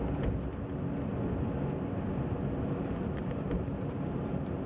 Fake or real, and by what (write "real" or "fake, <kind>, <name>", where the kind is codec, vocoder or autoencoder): real